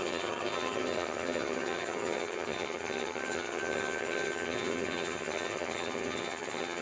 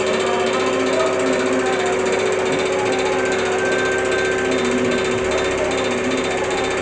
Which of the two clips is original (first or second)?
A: second